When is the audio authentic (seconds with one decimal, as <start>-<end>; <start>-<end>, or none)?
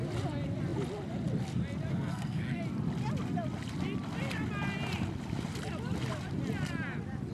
0.0-1.9; 2.6-7.3